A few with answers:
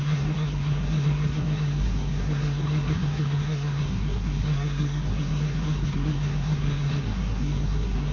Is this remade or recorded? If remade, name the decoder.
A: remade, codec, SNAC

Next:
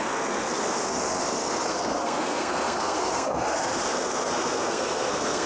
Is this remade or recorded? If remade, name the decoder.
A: remade, codec, SNAC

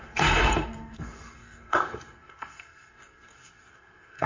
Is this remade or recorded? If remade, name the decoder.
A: remade, codec, SNAC